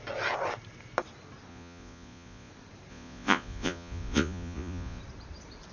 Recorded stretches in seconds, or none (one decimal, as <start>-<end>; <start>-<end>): 0.0-1.5; 2.5-2.9; 5.0-5.7